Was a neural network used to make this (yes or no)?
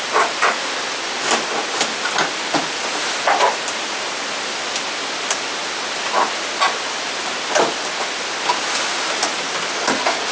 no